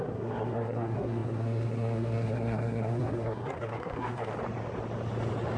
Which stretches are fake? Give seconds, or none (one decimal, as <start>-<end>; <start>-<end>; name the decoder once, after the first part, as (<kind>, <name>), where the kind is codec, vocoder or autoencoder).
0.0-4.3 (codec, SNAC)

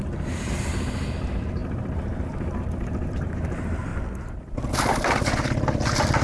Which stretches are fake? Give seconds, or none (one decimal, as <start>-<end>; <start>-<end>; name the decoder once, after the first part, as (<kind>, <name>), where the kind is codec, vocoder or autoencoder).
none

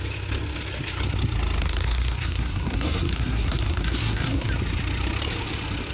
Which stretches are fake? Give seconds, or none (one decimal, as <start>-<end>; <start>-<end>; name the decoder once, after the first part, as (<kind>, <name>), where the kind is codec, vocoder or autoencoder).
1.6-4.5 (codec, SNAC)

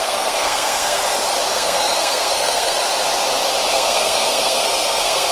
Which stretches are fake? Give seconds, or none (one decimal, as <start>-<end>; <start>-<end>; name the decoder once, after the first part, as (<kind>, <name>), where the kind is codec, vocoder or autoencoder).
0.0-1.0 (codec, SNAC); 1.5-2.8; 3.7-5.3

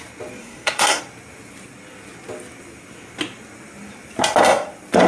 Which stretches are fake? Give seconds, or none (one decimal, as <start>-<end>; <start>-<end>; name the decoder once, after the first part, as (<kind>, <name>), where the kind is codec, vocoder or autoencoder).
0.4-1.0 (codec, SNAC)